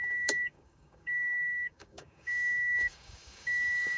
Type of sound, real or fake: fake